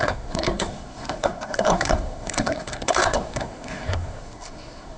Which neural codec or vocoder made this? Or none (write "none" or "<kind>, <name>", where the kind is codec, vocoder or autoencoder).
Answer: codec, SNAC